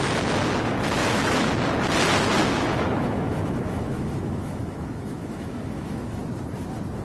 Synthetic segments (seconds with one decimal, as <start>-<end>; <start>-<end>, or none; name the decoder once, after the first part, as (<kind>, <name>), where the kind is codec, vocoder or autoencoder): 1.0-1.5 (autoencoder, DAC-VAE); 2.4-6.2